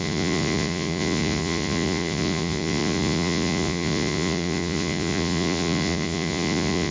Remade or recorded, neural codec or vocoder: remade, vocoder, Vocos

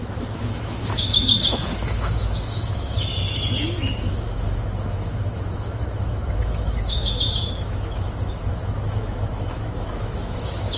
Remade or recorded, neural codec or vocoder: remade, autoencoder, DAC-VAE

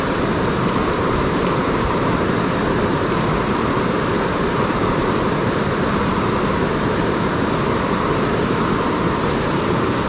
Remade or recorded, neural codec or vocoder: remade, vocoder, BigVGAN v2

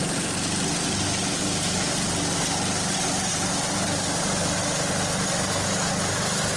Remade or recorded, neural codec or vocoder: recorded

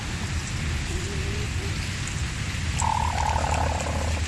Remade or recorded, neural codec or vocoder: recorded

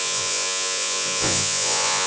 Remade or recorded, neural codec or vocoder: remade, vocoder, Vocos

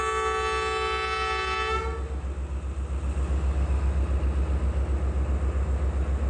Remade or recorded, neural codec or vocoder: recorded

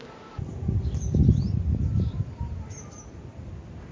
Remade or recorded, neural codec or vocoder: recorded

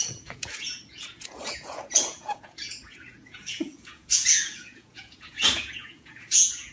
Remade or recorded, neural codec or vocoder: remade, vocoder, Vocos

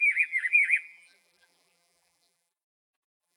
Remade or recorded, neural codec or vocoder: remade, vocoder, BigVGAN v2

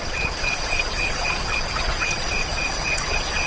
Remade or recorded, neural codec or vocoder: remade, vocoder, Vocos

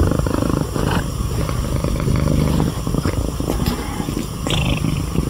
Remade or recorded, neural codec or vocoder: recorded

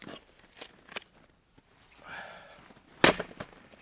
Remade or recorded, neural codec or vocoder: recorded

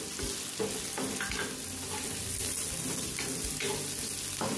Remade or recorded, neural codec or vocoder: recorded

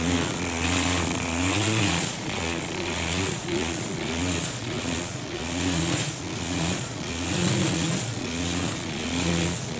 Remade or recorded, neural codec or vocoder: remade, vocoder, Vocos